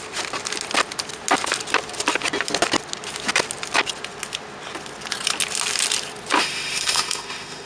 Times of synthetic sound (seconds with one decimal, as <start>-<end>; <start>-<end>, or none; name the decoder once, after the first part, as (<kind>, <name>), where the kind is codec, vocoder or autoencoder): 6.4-7.7 (autoencoder, DAC-VAE)